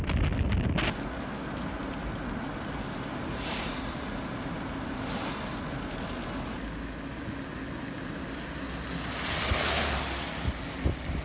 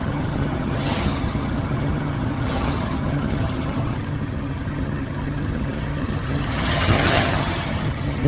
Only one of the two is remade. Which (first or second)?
second